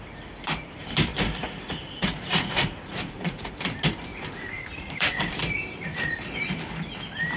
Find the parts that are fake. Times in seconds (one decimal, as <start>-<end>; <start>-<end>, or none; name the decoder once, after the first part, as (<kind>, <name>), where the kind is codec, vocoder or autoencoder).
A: 1.1-3.5 (vocoder, Vocos); 4.1-5.3

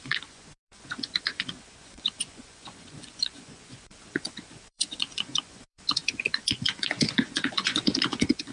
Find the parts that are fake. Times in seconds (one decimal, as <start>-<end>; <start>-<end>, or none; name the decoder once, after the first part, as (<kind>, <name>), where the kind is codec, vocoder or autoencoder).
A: 0.0-8.5 (vocoder, Vocos)

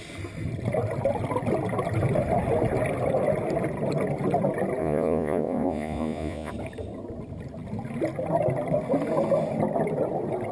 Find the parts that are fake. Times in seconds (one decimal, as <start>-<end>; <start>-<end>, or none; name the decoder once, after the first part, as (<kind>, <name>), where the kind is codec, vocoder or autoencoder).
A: 4.8-6.5 (vocoder, Vocos)

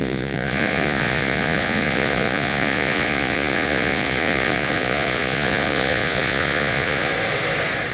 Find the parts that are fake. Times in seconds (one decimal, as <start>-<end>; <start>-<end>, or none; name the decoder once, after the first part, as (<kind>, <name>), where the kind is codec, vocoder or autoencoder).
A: 0.0-7.1 (vocoder, Vocos)

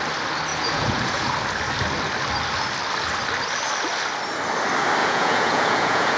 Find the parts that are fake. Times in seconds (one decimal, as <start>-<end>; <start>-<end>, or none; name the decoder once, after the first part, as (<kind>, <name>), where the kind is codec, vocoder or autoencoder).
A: 0.5-1.3 (vocoder, Vocos); 5.0-6.2

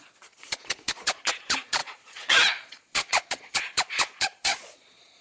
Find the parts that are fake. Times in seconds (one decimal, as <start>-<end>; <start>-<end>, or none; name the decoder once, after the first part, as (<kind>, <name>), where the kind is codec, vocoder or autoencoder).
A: 0.0-5.2 (vocoder, Vocos)

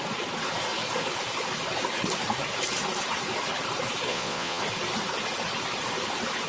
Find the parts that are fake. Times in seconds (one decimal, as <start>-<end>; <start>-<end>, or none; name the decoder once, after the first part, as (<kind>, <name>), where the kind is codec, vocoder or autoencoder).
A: 4.1-4.6 (vocoder, Vocos)

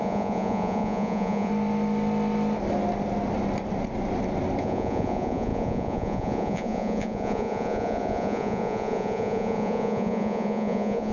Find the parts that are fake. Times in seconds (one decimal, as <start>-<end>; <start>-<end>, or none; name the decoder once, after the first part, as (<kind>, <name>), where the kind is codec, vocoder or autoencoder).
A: 0.0-1.5 (vocoder, Vocos); 4.6-11.1